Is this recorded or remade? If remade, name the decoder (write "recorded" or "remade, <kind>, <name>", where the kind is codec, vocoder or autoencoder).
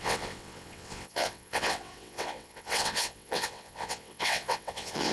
remade, vocoder, WaveNeXt